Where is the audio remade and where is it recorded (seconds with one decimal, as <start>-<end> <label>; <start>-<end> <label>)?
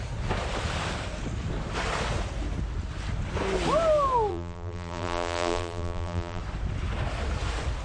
0.0-4.3 recorded; 4.3-6.4 remade; 6.4-7.8 recorded